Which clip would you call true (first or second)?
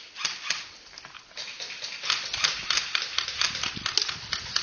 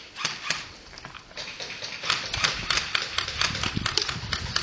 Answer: first